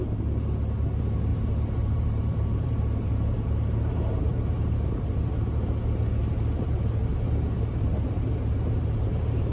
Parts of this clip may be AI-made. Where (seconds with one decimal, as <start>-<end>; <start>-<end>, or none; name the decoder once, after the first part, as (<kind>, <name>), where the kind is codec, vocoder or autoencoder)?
1.3-5.3 (vocoder, BigVGAN v2); 7.1-9.5